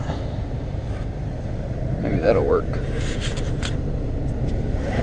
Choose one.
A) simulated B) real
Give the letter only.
A